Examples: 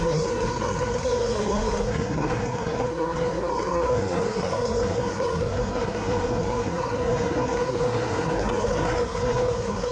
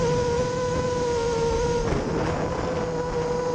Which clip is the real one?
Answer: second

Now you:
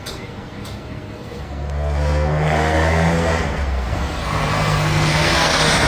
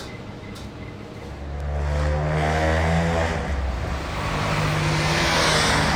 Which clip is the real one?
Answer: second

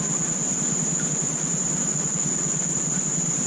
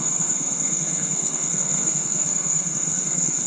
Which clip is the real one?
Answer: first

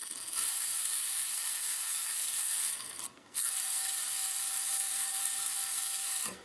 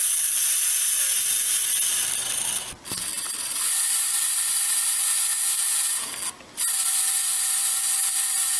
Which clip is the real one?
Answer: second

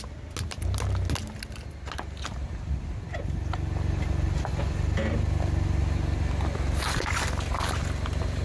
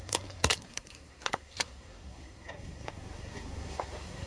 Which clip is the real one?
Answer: first